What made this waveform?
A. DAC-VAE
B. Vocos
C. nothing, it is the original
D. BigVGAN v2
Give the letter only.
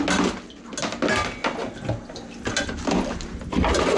C